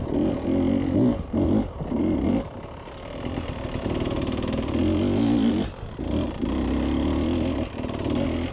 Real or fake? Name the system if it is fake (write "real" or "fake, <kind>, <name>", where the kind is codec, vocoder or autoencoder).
real